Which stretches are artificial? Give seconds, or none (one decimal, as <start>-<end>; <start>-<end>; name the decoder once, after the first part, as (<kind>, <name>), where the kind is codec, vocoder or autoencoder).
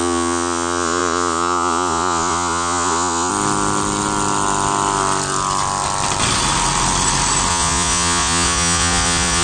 0.0-3.3 (vocoder, Vocos); 7.5-9.4